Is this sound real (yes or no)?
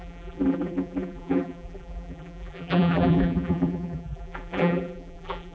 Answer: no